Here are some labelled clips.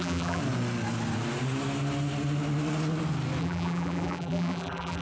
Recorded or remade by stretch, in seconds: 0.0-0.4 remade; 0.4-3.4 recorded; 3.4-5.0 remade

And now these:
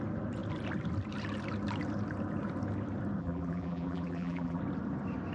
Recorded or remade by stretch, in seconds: 0.0-3.2 recorded; 3.2-4.6 remade; 4.6-5.3 recorded

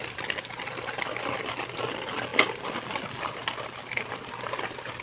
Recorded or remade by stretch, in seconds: 0.0-5.0 recorded

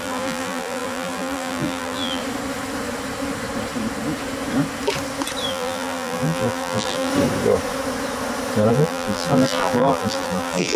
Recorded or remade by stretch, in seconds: 0.0-2.2 remade; 2.2-5.5 recorded; 5.5-7.1 remade; 7.1-8.7 recorded; 8.7-10.8 remade

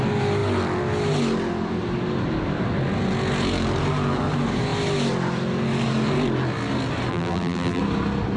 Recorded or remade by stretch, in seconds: 0.0-7.1 recorded; 7.1-7.8 remade; 7.8-8.4 recorded

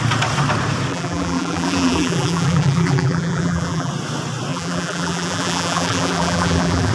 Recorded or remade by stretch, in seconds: 0.0-0.9 recorded; 0.9-3.9 remade; 3.9-4.5 recorded; 4.5-6.9 remade